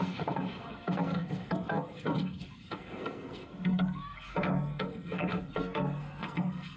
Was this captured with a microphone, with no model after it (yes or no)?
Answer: no